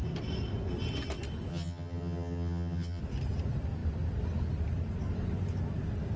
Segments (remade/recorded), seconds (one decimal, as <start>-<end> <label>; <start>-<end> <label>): 0.0-1.5 recorded; 1.5-3.0 remade; 3.0-6.2 recorded